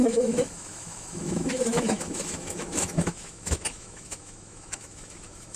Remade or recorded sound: remade